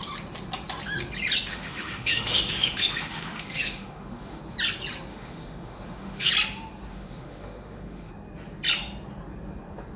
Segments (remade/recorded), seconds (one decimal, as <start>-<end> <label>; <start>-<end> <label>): 0.0-1.5 recorded; 1.5-4.4 remade; 4.4-5.1 recorded; 5.1-6.3 remade; 6.3-6.9 recorded; 6.9-8.1 remade; 8.1-10.0 recorded